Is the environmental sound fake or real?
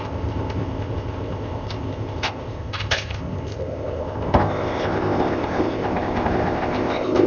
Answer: fake